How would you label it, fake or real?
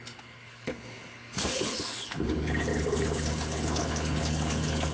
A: fake